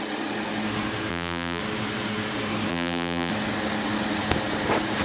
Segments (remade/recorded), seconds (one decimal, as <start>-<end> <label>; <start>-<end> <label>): 0.0-1.1 recorded; 1.1-1.6 remade; 1.6-2.7 recorded; 2.7-3.3 remade; 3.3-5.0 recorded